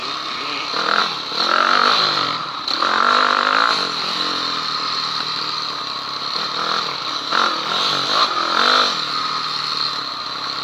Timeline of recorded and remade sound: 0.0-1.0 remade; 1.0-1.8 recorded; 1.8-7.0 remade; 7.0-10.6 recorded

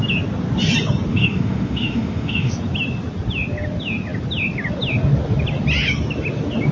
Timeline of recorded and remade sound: 0.0-1.1 recorded; 1.1-2.5 remade; 2.5-6.7 recorded